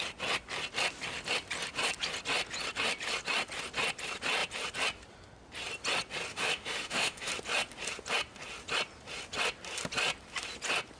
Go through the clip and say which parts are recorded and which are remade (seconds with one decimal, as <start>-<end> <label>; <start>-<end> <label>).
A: 0.0-6.3 recorded; 6.3-7.3 remade; 7.3-11.0 recorded